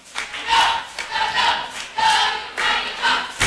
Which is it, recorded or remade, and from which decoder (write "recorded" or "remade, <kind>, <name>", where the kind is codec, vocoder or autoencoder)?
recorded